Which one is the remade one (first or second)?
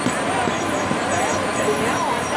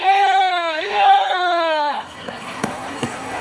second